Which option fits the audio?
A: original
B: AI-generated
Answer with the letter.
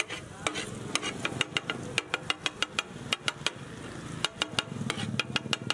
A